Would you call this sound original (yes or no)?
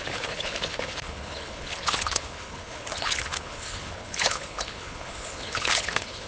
no